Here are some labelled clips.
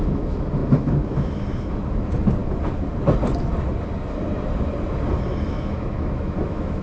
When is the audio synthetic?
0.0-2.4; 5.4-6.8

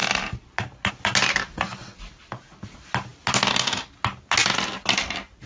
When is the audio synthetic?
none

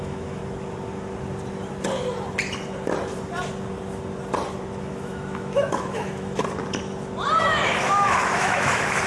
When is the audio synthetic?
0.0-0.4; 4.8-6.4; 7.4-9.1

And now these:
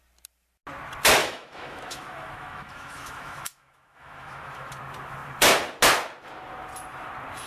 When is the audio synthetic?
1.2-4.7

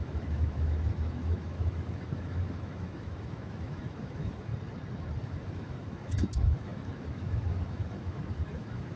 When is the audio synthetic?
0.0-4.5; 5.2-9.0